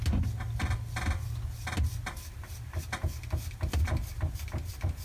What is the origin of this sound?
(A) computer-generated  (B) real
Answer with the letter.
B